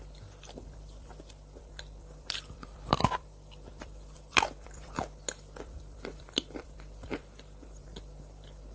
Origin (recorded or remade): remade